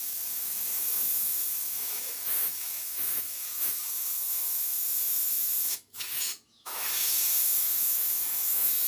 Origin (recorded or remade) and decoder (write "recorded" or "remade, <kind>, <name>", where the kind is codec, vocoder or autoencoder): remade, autoencoder, DAC-VAE